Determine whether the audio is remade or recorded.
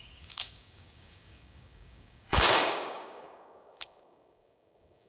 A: remade